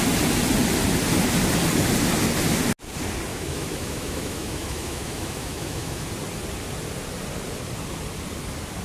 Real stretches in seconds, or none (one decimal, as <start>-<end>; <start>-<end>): 0.0-3.3; 6.1-8.8